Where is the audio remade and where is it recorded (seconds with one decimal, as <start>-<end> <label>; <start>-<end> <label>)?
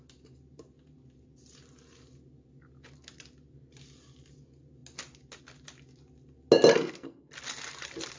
0.0-6.7 recorded; 6.7-7.3 remade; 7.3-8.2 recorded